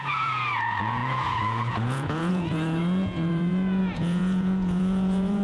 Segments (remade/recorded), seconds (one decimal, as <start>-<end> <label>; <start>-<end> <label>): 0.0-5.4 remade